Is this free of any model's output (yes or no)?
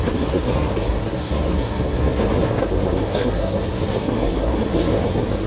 no